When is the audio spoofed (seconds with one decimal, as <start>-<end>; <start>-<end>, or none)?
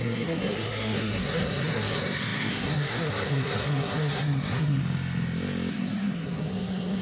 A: 0.0-4.8; 5.7-7.0